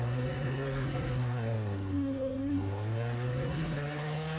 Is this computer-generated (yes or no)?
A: yes